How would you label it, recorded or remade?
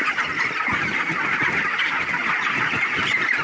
recorded